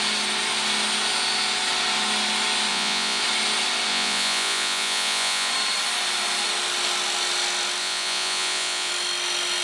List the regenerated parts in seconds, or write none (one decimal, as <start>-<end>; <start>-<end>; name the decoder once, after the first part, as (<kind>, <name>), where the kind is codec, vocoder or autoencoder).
2.7-3.2 (vocoder, Vocos); 3.9-5.5; 7.8-8.9